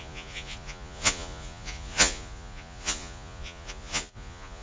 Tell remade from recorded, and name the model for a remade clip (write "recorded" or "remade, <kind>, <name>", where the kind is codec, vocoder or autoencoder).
remade, vocoder, Vocos